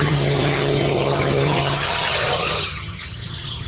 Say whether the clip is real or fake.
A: fake